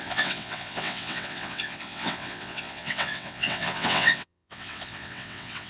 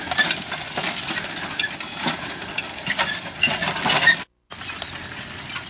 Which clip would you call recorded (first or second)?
second